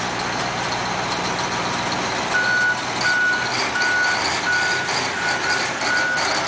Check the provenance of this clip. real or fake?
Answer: real